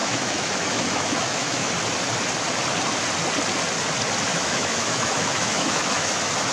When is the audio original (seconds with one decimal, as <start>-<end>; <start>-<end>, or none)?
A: 1.7-4.3; 6.1-6.5